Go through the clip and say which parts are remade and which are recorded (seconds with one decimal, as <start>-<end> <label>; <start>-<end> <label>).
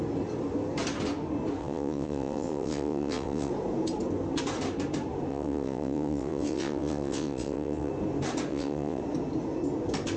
0.0-1.6 recorded; 1.6-3.5 remade; 3.5-5.3 recorded; 5.3-7.9 remade; 7.9-8.5 recorded; 8.5-9.0 remade; 9.0-10.2 recorded